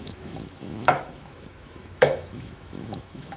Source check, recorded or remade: remade